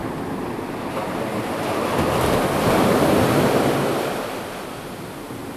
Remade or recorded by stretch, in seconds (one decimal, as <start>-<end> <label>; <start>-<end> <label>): 0.0-5.6 recorded